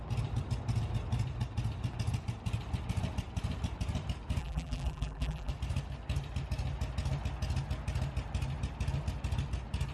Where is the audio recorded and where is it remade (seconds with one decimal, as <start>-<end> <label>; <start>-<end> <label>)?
0.0-4.4 recorded; 4.4-5.5 remade; 5.5-9.9 recorded